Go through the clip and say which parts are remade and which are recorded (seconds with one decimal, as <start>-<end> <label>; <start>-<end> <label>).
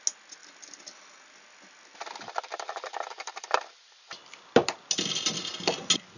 0.0-0.4 recorded; 0.4-4.1 remade; 4.1-6.2 recorded